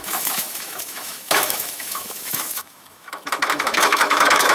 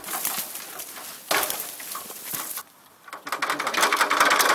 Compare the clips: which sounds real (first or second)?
second